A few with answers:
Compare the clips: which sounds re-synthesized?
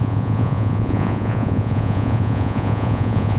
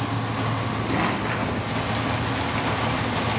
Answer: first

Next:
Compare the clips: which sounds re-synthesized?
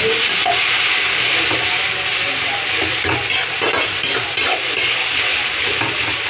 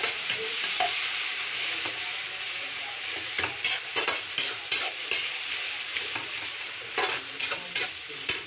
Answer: second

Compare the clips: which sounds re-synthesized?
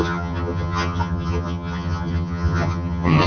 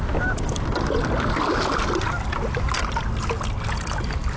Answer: first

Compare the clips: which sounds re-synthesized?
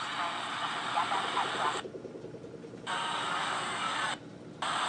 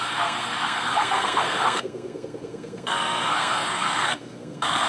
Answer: second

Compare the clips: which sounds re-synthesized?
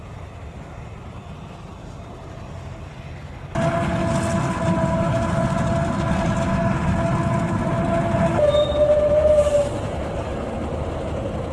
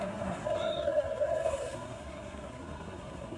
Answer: second